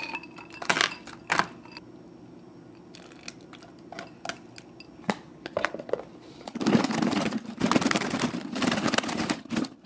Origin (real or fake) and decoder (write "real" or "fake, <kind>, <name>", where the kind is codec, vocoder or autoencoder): real